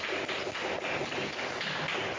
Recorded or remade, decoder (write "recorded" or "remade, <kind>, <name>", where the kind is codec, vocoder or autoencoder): recorded